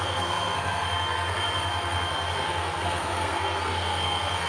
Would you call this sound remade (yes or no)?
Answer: yes